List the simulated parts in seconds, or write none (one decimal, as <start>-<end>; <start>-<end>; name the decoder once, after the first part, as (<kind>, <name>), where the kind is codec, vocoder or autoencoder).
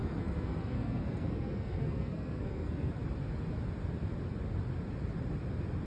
0.0-2.9 (codec, SNAC)